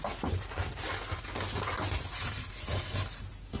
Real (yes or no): yes